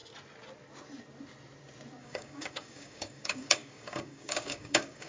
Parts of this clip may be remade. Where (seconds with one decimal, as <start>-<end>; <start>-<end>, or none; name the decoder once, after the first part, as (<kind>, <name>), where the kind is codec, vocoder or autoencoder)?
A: 2.0-5.1 (codec, DAC)

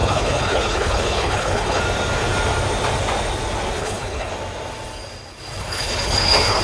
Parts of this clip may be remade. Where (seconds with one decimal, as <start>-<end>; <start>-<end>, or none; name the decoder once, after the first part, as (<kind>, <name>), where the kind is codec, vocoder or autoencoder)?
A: 0.0-1.8 (codec, HILCodec); 3.8-4.3; 5.6-6.6

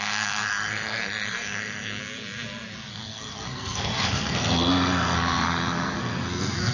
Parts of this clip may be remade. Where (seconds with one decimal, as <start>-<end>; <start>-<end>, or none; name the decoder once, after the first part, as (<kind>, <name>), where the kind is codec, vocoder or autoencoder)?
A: 0.0-2.0 (codec, SNAC); 2.9-6.7

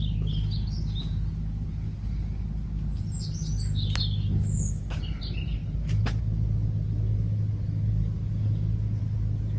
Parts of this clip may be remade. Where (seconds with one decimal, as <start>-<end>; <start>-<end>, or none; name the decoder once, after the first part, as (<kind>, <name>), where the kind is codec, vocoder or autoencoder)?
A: none

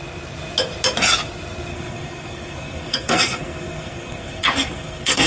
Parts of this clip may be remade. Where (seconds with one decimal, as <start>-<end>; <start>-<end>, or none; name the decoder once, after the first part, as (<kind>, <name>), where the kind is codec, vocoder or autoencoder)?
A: 1.7-5.3 (codec, SNAC)

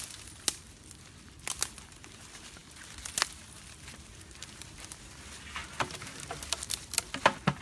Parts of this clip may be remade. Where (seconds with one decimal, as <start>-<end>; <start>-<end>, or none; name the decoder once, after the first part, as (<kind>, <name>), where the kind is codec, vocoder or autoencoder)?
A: none